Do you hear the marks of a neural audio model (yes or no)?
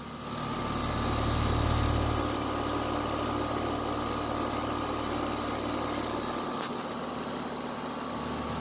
no